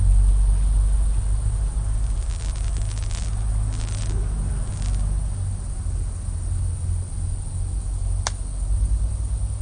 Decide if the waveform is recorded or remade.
recorded